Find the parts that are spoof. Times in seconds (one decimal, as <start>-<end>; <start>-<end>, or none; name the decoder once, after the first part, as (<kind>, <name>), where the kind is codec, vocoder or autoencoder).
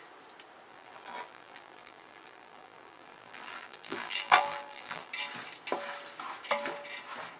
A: 0.7-5.1 (vocoder, BigVGAN v2)